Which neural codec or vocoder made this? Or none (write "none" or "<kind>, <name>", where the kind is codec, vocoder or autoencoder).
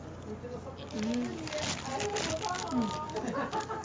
none